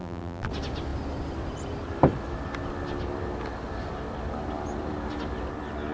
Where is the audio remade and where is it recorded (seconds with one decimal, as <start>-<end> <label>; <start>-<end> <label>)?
0.0-0.5 remade; 0.5-5.9 recorded